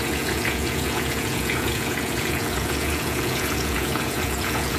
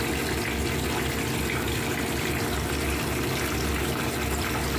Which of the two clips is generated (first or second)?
first